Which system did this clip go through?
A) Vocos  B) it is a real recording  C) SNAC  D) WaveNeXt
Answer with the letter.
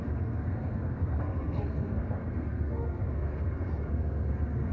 C